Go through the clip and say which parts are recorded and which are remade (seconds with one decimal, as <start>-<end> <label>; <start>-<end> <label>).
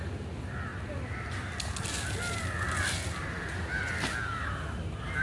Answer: 0.0-5.2 recorded